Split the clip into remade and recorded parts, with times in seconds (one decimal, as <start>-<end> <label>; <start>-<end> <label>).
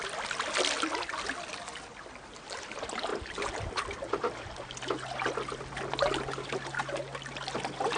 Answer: 0.0-8.0 recorded